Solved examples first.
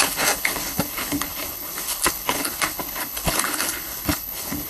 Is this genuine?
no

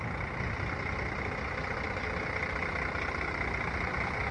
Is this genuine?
yes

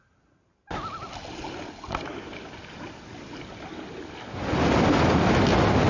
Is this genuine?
yes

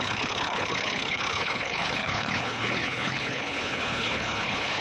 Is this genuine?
no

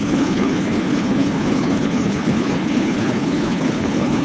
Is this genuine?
no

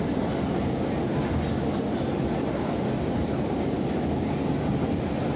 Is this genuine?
yes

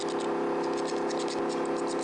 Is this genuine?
yes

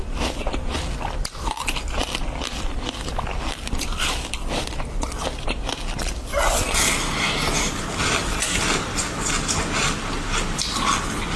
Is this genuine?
yes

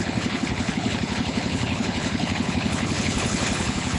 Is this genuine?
no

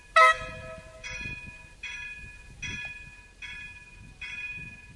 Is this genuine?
yes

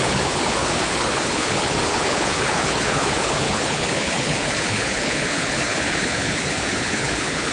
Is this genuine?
no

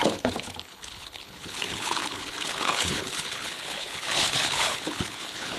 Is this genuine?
no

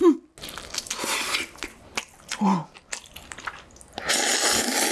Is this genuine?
yes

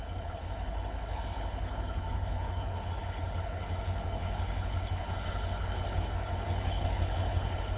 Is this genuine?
no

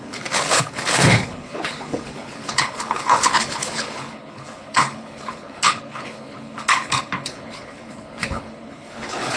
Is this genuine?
no